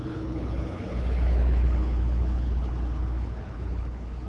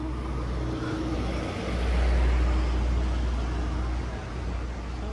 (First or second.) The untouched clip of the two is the second